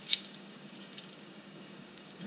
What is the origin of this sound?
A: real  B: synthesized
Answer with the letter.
B